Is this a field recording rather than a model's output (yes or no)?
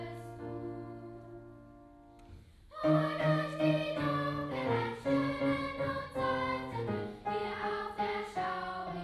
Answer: yes